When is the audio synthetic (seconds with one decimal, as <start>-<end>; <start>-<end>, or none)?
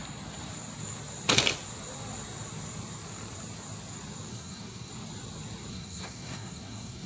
4.3-4.9; 5.7-7.1